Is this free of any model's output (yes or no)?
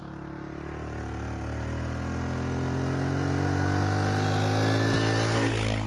yes